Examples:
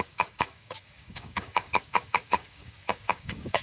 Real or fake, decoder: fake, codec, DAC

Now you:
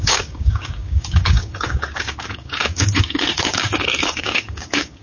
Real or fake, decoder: fake, codec, DAC